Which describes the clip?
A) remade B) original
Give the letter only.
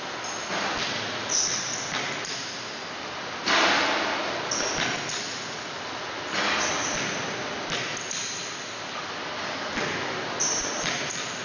B